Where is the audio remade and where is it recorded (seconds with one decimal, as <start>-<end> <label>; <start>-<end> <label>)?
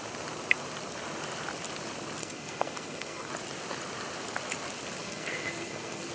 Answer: 0.0-2.2 recorded; 2.2-3.3 remade; 3.3-5.0 recorded; 5.0-6.1 remade